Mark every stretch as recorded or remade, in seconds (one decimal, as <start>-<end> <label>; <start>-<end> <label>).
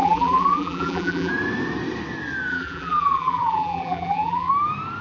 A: 0.0-1.3 remade; 1.3-2.5 recorded; 2.5-4.5 remade; 4.5-5.0 recorded